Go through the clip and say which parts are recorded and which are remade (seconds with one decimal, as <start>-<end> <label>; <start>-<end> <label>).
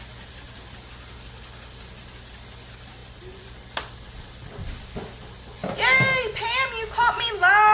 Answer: 0.0-7.7 recorded